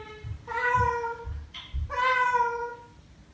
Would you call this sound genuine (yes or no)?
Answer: yes